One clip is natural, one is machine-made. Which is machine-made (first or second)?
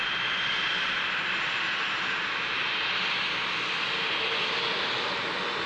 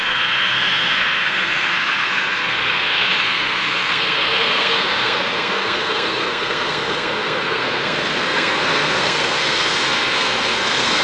second